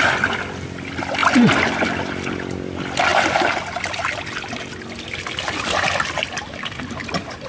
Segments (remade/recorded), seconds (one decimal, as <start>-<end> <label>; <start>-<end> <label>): 0.0-7.5 recorded